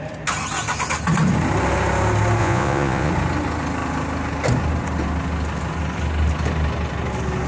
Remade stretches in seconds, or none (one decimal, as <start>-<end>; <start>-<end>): 2.4-3.1